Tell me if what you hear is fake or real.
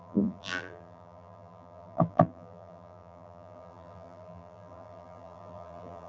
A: fake